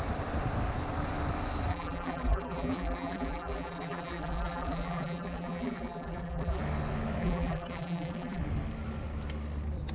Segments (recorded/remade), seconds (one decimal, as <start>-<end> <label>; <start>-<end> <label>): 0.0-1.7 recorded; 1.7-6.6 remade; 6.6-7.2 recorded; 7.2-8.4 remade; 8.4-9.9 recorded